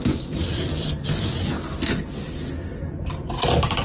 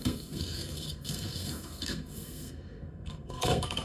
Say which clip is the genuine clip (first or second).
first